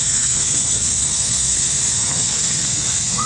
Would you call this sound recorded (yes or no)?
no